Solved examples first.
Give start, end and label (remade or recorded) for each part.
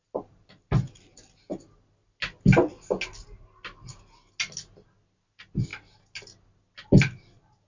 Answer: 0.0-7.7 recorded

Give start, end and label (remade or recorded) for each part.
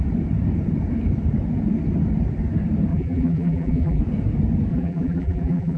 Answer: 0.0-2.9 recorded; 2.9-4.0 remade; 4.0-4.7 recorded; 4.7-5.8 remade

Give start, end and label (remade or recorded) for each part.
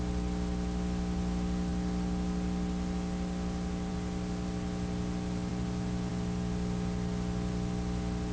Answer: 0.0-8.3 recorded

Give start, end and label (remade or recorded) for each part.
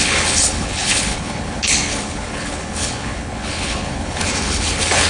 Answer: 0.0-5.1 remade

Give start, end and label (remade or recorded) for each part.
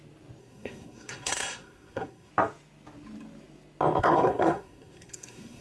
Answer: 0.0-0.4 recorded; 0.4-2.3 remade; 2.3-4.0 recorded; 4.0-5.6 remade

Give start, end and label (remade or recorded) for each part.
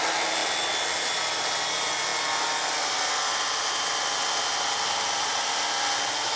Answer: 0.0-0.4 recorded; 0.4-1.4 remade; 1.4-6.4 recorded